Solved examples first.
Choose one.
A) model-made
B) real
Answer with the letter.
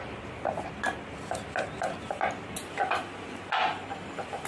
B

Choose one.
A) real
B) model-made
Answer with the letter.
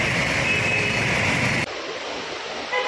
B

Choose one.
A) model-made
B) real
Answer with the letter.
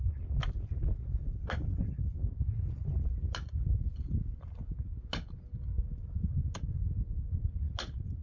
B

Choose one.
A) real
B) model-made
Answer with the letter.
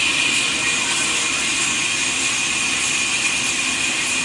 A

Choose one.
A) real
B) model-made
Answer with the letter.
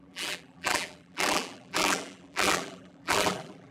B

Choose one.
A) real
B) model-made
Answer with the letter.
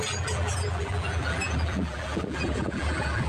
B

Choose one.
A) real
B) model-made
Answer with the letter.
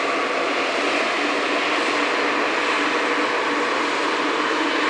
A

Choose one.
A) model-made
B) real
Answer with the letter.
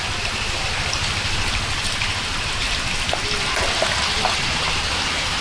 B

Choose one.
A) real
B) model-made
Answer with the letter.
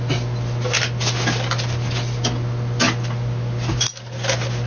A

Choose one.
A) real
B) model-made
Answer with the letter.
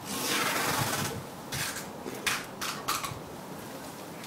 A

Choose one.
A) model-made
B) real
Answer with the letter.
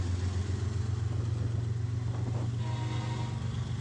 B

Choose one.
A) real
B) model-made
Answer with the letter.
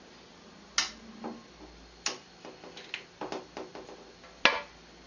A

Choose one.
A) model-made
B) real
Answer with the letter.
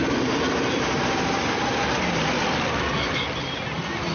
B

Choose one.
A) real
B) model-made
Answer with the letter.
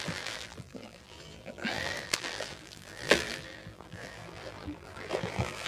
B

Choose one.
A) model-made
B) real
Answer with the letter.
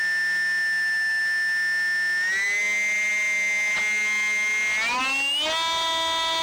B